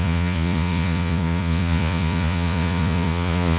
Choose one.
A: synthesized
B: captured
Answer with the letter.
A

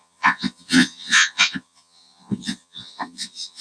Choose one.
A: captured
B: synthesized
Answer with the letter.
B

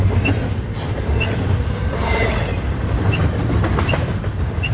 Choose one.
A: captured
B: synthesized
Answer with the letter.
A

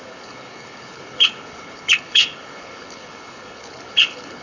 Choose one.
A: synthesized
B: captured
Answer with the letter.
A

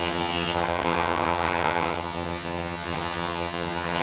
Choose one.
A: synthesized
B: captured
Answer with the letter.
A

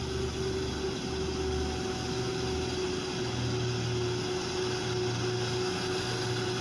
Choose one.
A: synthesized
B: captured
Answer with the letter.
B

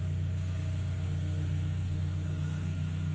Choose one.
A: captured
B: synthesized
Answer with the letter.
B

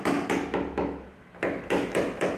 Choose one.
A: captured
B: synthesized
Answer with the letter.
B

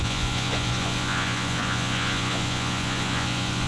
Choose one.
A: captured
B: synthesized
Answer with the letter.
B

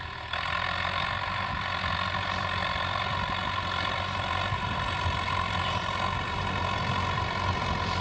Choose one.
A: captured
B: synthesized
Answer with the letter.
B